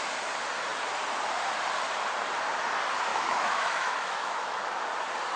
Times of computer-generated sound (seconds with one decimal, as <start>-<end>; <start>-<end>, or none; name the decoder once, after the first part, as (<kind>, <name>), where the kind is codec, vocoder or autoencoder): 3.1-4.7 (autoencoder, DAC-VAE)

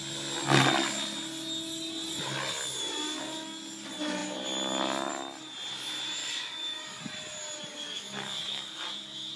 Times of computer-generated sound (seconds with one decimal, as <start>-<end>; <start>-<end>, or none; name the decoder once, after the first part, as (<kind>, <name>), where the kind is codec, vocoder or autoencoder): 6.2-7.0 (codec, DAC); 7.7-9.4